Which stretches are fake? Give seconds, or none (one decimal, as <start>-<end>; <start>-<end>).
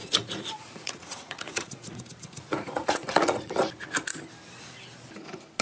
0.0-2.0; 2.5-3.5